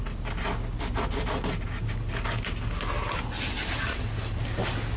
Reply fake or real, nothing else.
real